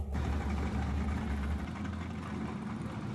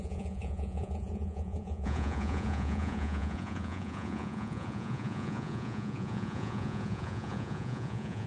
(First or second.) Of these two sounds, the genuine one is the first